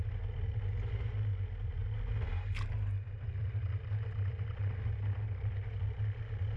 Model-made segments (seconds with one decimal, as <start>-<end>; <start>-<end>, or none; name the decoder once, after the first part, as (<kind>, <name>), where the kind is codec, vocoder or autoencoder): none